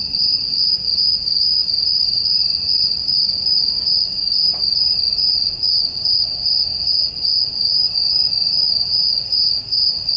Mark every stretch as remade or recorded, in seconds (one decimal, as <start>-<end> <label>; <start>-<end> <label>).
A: 0.0-1.6 recorded; 1.6-3.6 remade; 3.6-10.2 recorded